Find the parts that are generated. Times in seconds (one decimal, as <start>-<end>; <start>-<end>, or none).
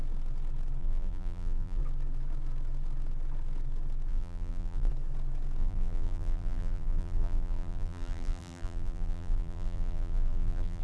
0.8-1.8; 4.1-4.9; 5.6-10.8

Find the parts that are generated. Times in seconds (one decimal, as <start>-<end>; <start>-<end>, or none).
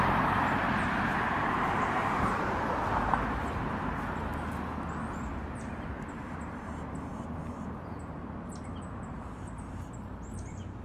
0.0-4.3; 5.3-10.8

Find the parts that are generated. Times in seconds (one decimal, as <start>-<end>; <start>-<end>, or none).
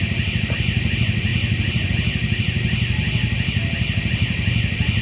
none